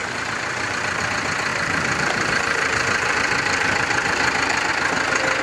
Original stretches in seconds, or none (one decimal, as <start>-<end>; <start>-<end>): 1.0-1.5; 4.7-5.4